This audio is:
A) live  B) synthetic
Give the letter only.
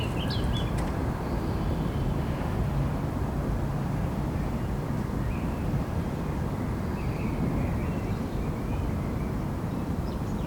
B